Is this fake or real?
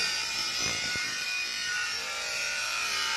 fake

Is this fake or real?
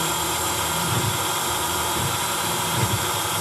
fake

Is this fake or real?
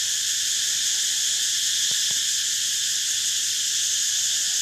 real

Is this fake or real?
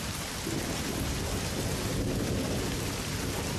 fake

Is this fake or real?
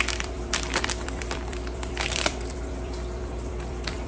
fake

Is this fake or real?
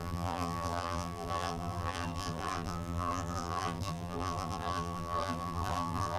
fake